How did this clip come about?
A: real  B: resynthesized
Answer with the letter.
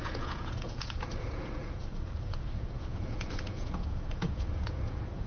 B